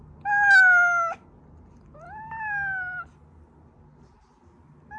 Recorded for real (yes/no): yes